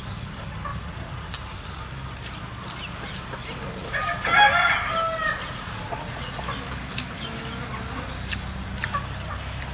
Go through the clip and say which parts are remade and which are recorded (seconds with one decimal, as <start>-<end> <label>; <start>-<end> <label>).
0.0-0.7 recorded; 0.7-1.3 remade; 1.3-5.5 recorded; 5.5-6.4 remade; 6.4-9.7 recorded